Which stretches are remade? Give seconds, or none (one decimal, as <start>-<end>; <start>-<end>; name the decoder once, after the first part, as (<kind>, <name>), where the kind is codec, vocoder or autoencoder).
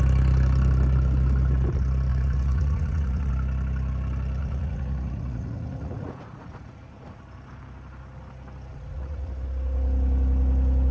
2.1-3.3 (vocoder, Vocos); 4.4-7.2; 8.7-9.3